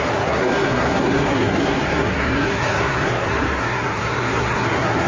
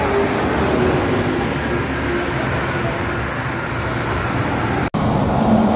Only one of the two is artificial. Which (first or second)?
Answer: first